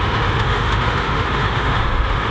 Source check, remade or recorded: remade